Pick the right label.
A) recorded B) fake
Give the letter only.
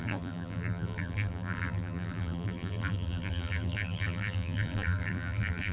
B